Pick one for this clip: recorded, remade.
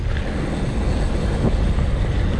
recorded